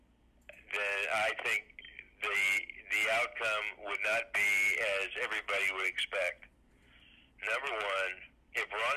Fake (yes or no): no